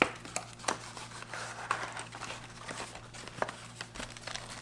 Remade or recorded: recorded